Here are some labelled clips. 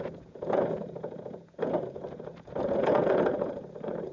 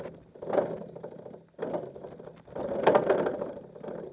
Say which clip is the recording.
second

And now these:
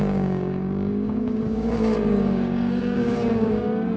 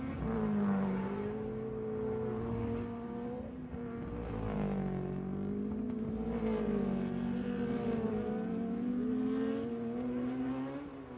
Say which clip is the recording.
second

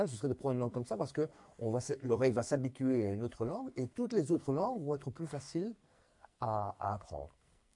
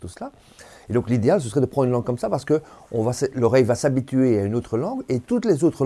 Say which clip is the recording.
second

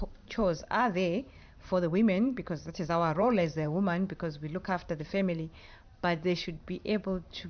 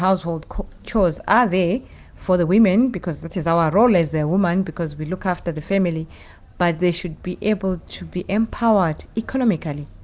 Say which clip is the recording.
second